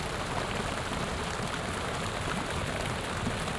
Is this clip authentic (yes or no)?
yes